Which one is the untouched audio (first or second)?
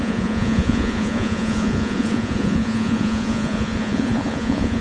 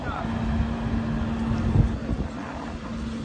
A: second